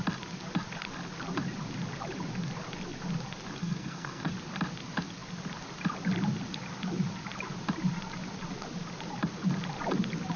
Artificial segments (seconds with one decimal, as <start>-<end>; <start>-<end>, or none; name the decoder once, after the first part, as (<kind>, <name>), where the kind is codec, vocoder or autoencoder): 3.6-4.3 (codec, SNAC)